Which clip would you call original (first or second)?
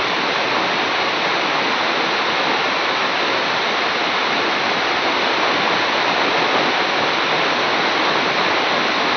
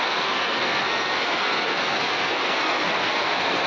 first